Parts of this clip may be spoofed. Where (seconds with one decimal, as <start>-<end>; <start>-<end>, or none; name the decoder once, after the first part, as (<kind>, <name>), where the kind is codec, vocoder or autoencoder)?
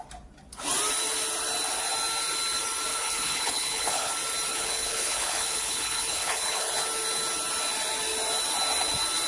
2.9-4.1 (codec, HILCodec); 4.5-6.7